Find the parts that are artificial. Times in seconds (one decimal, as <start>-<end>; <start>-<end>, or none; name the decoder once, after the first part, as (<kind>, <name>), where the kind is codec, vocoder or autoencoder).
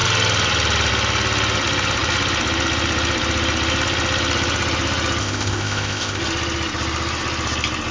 5.2-6.2 (codec, ZipCodec)